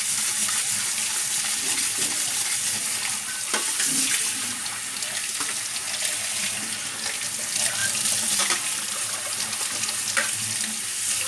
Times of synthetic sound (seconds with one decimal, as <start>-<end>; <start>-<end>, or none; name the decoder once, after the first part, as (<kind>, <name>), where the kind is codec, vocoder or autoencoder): none